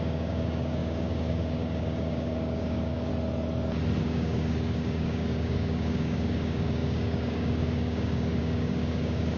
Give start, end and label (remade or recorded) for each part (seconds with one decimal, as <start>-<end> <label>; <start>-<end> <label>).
0.0-3.1 remade; 3.1-4.0 recorded; 4.0-9.4 remade